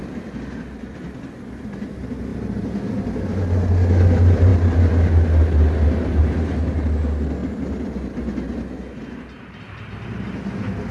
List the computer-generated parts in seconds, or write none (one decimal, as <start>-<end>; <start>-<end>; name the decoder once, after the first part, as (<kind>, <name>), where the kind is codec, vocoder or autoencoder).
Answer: none